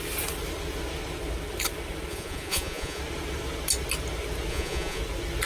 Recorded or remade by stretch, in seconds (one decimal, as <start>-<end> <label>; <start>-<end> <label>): 0.0-2.1 recorded; 2.1-3.0 remade; 3.0-4.5 recorded; 4.5-5.0 remade; 5.0-5.5 recorded